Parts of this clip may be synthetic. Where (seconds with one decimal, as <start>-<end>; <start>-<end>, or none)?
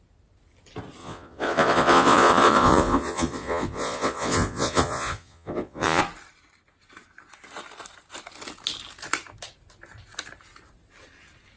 1.0-6.0